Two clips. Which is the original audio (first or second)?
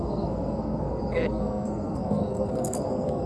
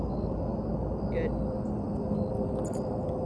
second